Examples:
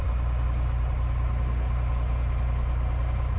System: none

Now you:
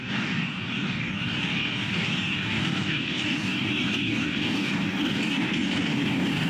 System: codec, DAC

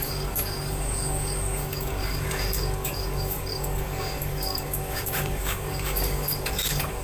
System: codec, DAC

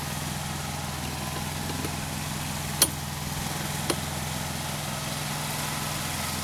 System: none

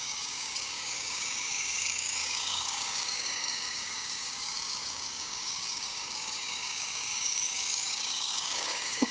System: codec, DAC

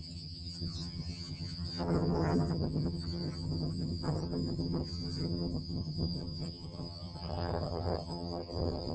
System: vocoder, HiFi-GAN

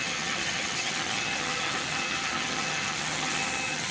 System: vocoder, HiFi-GAN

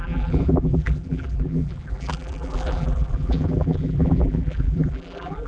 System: vocoder, BigVGAN v2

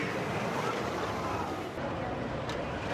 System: none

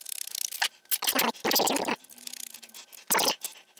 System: none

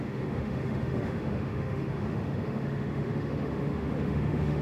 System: autoencoder, DAC-VAE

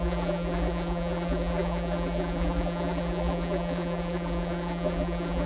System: vocoder, BigVGAN v2